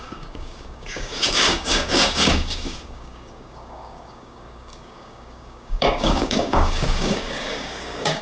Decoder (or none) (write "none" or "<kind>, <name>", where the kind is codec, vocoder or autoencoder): codec, DAC